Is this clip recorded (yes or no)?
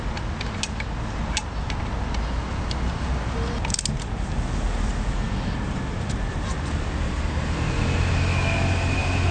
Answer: yes